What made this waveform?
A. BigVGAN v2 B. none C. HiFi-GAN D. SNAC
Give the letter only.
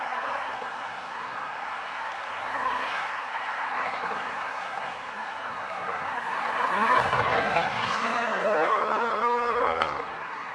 D